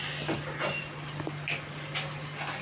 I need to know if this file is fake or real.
real